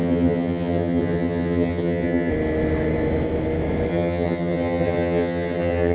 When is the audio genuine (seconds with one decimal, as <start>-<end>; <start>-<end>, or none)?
2.3-3.9